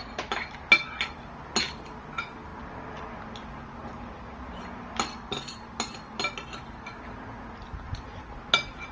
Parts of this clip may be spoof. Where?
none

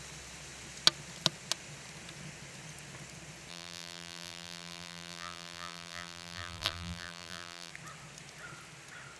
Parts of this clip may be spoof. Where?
3.5-7.7 (vocoder, BigVGAN v2)

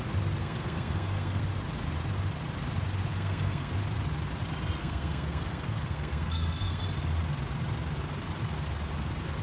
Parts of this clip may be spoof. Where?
0.4-1.4 (codec, SNAC); 3.1-3.7; 4.8-6.8